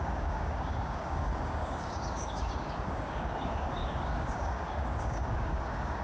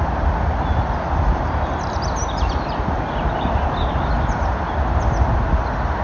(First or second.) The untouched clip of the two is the second